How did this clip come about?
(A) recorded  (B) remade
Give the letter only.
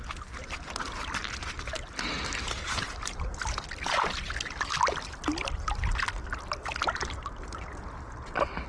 A